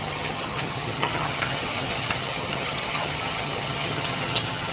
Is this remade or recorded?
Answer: remade